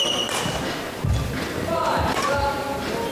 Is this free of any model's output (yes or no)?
yes